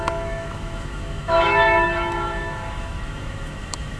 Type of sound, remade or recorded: remade